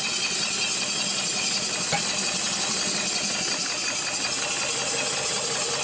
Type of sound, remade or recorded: recorded